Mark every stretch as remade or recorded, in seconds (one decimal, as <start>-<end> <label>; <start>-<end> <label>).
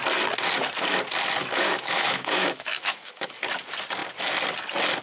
0.0-1.4 recorded; 1.4-3.4 remade; 3.4-5.0 recorded